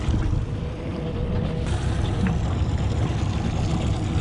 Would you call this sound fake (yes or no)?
no